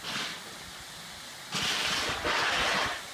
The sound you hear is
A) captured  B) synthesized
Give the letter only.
A